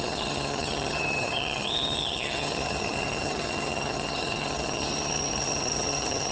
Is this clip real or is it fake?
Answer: fake